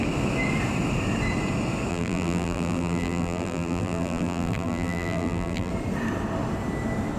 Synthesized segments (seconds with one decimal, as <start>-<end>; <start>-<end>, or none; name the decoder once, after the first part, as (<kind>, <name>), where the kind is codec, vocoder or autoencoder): 1.9-5.7 (vocoder, BigVGAN v2)